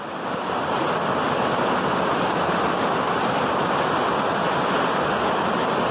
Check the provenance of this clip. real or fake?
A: real